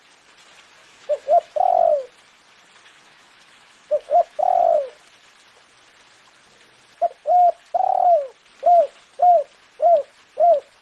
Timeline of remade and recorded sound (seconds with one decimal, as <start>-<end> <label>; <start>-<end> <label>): 0.0-0.8 recorded; 0.8-1.7 remade; 1.7-2.9 recorded; 2.9-4.6 remade; 4.6-10.8 recorded